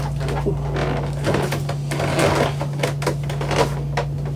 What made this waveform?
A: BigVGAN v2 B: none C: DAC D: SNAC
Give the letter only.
B